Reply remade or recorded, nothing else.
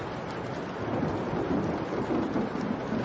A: recorded